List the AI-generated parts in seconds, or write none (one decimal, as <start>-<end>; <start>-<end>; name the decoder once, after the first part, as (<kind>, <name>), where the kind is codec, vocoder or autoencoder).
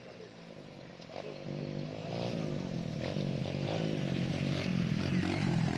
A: 0.0-0.9 (vocoder, BigVGAN v2); 3.4-5.8